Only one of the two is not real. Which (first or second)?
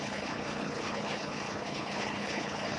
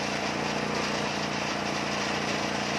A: first